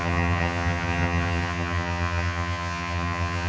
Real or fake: fake